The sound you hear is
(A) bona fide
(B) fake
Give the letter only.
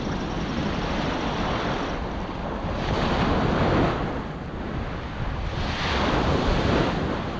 A